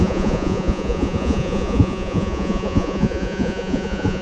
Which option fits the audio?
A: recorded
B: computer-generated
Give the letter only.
B